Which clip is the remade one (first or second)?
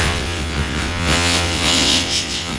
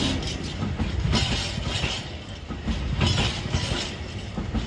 first